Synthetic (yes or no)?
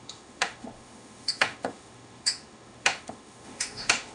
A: yes